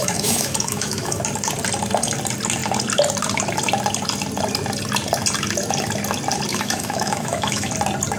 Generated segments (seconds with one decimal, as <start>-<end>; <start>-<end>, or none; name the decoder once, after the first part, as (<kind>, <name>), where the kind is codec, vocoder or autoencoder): 0.0-1.2 (autoencoder, DAC-VAE); 6.5-7.7